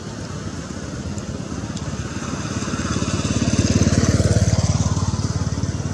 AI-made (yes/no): no